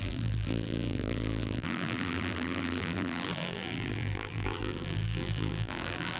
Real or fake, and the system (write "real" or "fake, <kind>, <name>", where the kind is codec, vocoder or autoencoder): fake, vocoder, BigVGAN v2